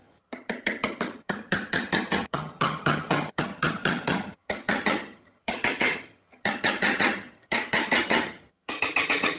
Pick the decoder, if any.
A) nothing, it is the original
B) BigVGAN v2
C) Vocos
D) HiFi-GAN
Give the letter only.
D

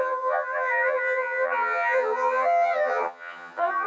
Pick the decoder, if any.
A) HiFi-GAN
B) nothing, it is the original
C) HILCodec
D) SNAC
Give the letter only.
A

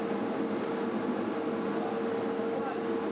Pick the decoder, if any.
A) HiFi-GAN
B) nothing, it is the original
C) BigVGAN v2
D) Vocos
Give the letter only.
B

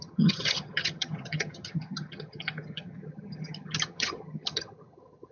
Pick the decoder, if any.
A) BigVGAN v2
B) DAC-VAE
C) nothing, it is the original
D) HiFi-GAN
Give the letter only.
D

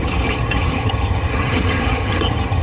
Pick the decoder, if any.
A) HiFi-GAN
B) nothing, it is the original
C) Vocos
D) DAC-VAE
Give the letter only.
A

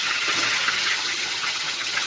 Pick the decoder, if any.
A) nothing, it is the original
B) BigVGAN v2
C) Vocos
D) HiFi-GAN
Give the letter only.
D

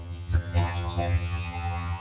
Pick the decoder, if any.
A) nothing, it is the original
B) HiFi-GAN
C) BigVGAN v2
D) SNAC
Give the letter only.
B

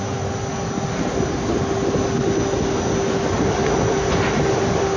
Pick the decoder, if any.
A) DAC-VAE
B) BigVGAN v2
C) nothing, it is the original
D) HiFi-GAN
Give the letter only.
C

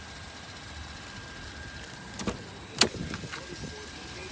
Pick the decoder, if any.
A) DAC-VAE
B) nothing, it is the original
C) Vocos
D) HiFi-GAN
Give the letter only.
B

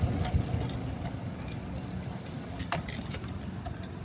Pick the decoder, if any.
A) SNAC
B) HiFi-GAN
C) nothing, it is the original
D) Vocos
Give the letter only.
C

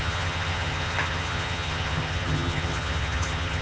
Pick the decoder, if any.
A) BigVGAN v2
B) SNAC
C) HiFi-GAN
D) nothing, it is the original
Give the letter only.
C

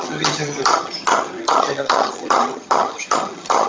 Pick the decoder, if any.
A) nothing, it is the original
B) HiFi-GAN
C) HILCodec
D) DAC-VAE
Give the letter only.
B